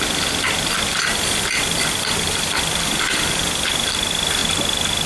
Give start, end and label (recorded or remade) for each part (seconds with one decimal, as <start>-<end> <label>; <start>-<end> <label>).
0.0-0.9 recorded; 0.9-3.9 remade; 3.9-5.1 recorded